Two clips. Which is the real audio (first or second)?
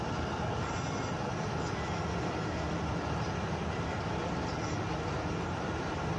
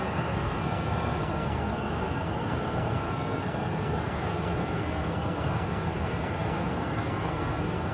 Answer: first